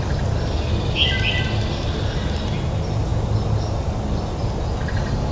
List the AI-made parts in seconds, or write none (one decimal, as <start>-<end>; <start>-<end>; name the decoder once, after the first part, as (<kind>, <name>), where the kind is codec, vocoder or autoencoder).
none